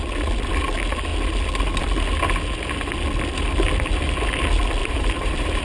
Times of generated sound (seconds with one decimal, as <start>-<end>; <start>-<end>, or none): 4.8-5.6